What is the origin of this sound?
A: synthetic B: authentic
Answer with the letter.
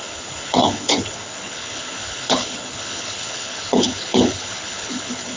A